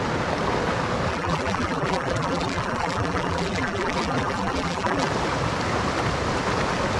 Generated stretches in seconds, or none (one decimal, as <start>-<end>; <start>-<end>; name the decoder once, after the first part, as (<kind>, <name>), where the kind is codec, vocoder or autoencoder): 1.1-5.1 (vocoder, BigVGAN v2)